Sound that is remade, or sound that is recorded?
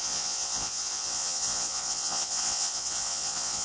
remade